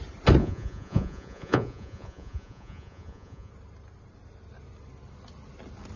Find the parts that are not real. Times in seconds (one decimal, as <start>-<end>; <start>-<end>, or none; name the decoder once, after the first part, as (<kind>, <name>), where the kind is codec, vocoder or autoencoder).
0.4-3.5 (vocoder, Vocos)

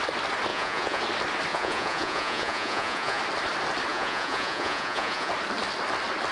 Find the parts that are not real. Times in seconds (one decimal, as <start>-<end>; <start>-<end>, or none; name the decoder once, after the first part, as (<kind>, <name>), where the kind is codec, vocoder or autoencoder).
0.5-1.0 (vocoder, Vocos); 1.5-3.2; 3.9-5.3

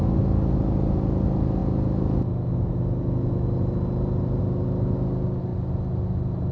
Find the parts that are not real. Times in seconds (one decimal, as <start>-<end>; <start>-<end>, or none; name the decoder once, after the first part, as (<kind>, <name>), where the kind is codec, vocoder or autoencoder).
none